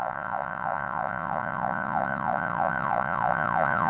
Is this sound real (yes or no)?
no